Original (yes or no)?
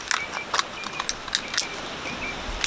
yes